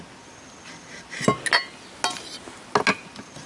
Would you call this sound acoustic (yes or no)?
yes